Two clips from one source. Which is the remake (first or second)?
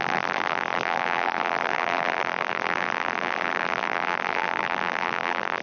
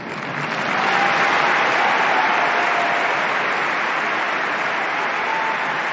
first